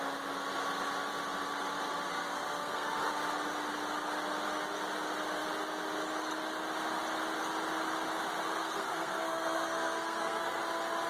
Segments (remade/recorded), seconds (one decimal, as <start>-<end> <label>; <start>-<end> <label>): 0.0-2.1 recorded; 2.1-3.1 remade; 3.1-8.6 recorded; 8.6-10.6 remade; 10.6-11.1 recorded